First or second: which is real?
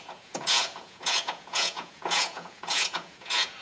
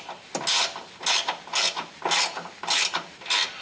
second